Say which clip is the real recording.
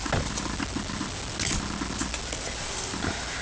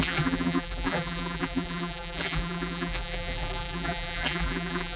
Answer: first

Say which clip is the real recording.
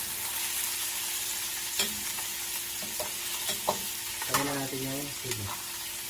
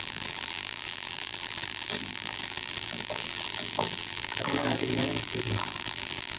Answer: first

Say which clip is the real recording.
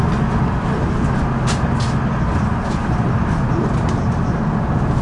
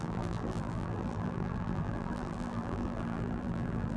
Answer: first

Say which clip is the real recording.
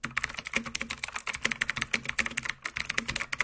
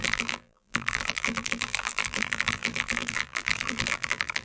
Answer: first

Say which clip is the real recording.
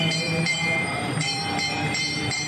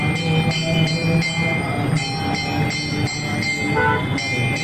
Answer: second